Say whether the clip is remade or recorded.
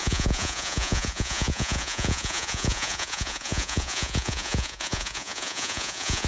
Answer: remade